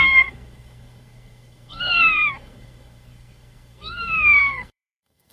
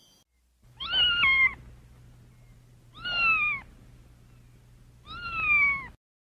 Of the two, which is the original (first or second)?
second